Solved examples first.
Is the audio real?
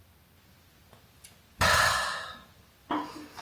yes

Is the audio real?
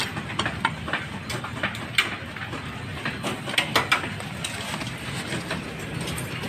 yes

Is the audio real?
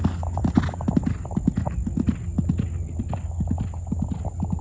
yes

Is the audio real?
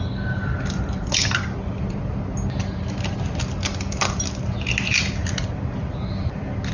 yes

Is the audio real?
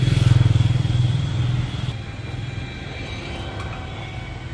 yes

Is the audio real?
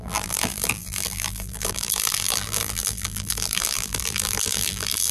no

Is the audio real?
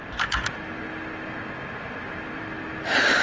yes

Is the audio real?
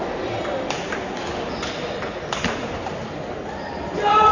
yes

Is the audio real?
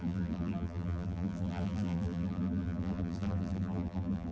no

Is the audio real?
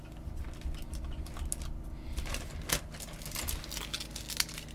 yes